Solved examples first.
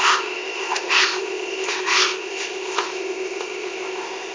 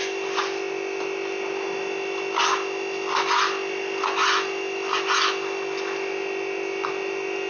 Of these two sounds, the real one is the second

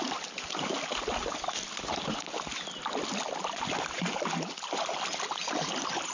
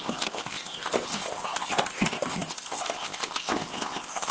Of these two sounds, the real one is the first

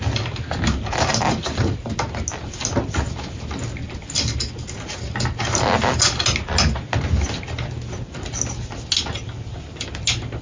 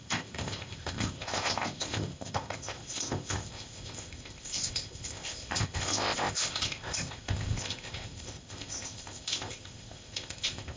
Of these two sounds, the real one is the first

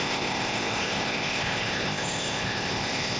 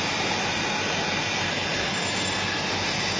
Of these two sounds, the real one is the second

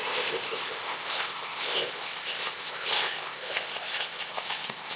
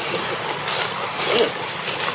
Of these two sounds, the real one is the second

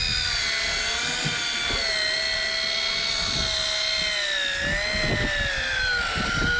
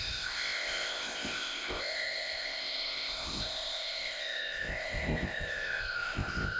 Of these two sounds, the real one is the first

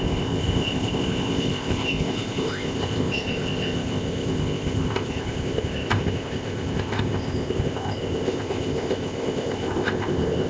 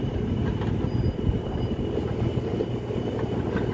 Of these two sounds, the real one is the second